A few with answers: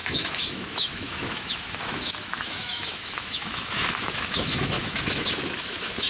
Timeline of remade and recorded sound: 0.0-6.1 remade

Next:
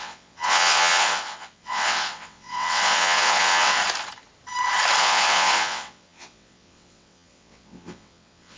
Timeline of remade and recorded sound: 0.0-3.8 remade; 3.8-5.0 recorded; 5.0-8.6 remade